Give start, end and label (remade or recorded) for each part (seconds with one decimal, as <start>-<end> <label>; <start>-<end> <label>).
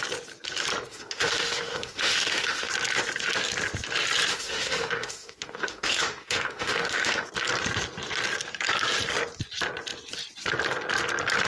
0.0-0.9 recorded; 0.9-2.7 remade; 2.7-4.3 recorded; 4.3-7.3 remade; 7.3-11.5 recorded